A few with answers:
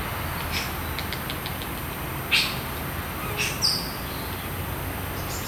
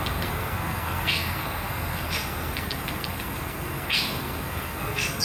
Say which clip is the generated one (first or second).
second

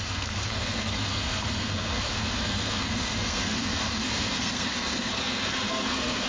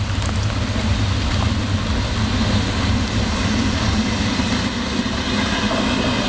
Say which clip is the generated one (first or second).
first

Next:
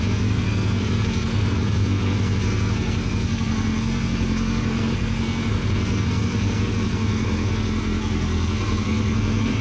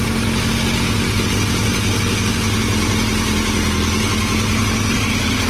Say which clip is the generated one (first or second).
first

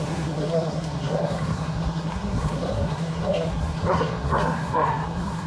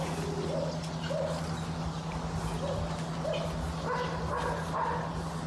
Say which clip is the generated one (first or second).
first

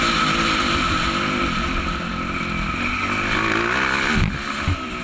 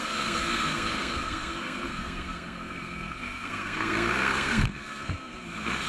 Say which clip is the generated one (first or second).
second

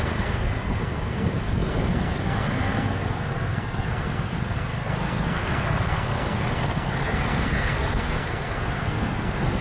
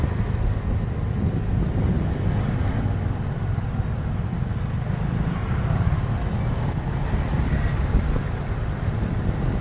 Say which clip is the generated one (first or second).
first